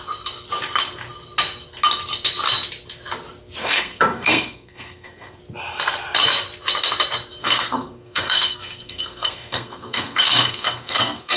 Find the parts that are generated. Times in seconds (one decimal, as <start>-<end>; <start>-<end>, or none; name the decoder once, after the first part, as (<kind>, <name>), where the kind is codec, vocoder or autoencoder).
3.6-5.4 (codec, SNAC); 7.4-11.4